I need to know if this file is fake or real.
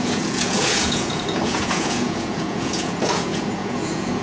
fake